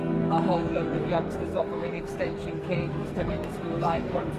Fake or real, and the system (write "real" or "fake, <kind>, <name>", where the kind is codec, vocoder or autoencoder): fake, codec, SNAC